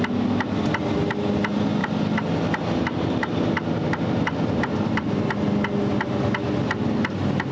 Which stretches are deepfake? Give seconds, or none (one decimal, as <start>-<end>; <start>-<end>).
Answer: 1.8-5.3